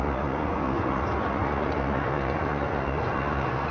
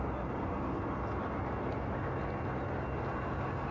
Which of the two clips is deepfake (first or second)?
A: first